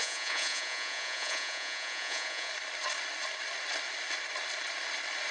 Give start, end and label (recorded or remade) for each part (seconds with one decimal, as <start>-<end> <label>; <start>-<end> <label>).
0.0-2.5 remade; 2.5-5.3 recorded

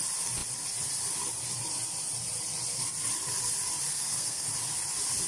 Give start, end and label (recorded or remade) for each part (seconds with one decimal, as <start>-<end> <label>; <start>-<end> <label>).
0.0-3.9 recorded; 3.9-4.5 remade; 4.5-5.3 recorded

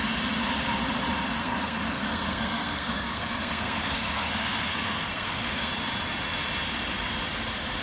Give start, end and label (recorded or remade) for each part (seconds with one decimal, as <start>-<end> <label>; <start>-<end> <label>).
0.0-1.4 recorded; 1.4-5.7 remade; 5.7-7.8 recorded

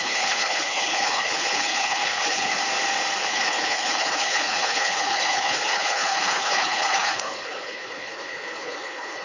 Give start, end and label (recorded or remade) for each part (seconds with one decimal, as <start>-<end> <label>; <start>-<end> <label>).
0.0-2.6 remade; 2.6-3.2 recorded; 3.2-9.2 remade

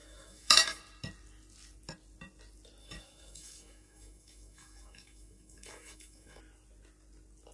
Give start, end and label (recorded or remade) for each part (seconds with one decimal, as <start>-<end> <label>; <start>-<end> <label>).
0.0-0.8 remade; 0.8-2.8 recorded; 2.8-6.4 remade; 6.4-7.5 recorded